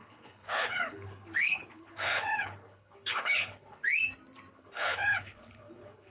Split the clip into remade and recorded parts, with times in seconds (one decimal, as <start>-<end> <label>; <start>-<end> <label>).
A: 0.0-3.9 remade; 3.9-4.5 recorded; 4.5-6.1 remade